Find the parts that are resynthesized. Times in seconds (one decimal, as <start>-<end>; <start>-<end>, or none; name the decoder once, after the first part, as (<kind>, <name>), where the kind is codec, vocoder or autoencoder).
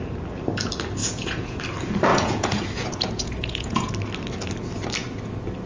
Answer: 1.0-1.6 (vocoder, Vocos); 2.1-3.9